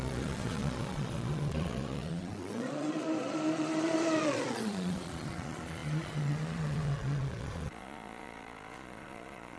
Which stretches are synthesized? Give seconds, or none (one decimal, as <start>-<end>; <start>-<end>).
0.0-9.6